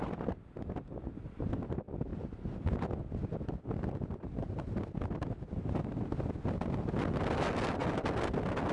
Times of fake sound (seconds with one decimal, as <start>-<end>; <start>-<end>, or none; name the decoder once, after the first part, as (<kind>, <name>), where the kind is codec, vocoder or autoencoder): none